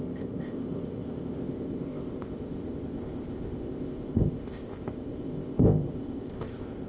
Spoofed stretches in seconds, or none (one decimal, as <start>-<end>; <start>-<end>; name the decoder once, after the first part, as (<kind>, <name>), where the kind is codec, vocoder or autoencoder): 0.0-6.9 (codec, ZipCodec)